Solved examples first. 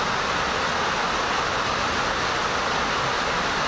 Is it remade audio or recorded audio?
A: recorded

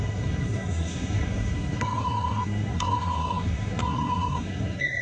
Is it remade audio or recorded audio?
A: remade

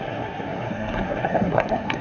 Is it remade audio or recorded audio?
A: remade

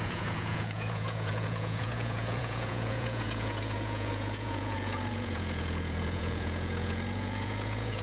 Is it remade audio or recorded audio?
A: remade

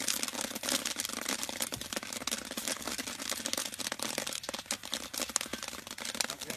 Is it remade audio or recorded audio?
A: recorded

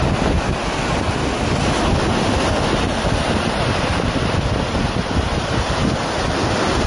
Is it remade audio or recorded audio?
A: recorded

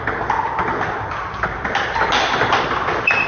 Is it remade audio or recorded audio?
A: recorded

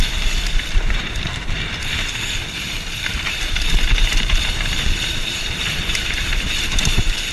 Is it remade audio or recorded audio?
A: remade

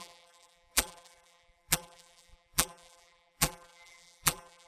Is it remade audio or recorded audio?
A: remade